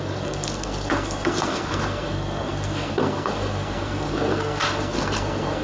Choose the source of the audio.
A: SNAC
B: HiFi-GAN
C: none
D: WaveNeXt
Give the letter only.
A